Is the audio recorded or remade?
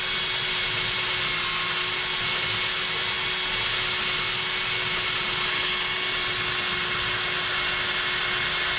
recorded